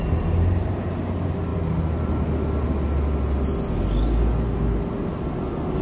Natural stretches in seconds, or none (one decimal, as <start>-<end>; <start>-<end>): 0.9-1.5; 2.3-5.8